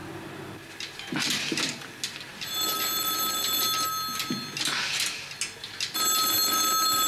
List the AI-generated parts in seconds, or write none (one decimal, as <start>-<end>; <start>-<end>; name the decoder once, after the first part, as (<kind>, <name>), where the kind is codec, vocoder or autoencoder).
none